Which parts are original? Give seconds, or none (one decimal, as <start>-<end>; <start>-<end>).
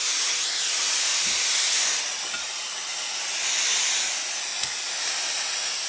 0.0-5.9